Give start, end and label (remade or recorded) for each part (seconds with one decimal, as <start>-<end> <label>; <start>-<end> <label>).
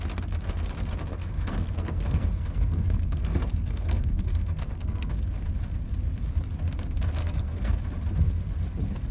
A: 0.0-1.1 recorded; 1.1-5.1 remade; 5.1-7.2 recorded; 7.2-7.8 remade; 7.8-9.1 recorded